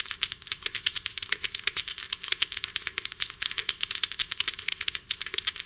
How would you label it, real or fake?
fake